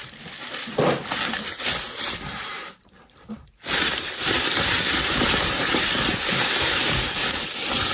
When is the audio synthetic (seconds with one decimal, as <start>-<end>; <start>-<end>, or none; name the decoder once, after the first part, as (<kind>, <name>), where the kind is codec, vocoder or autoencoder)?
2.4-7.9 (vocoder, BigVGAN v2)